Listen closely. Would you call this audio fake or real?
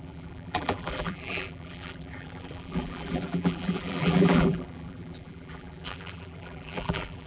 fake